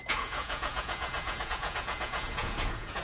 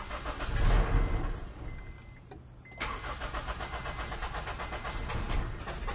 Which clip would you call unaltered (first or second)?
second